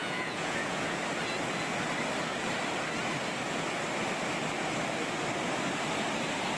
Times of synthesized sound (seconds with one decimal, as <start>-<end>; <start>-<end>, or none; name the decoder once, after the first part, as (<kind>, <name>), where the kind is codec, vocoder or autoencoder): 0.0-1.0 (vocoder, Vocos)